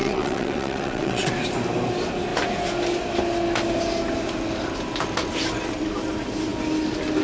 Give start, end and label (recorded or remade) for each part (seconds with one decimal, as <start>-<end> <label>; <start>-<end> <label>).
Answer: 0.0-1.3 remade; 1.3-7.2 recorded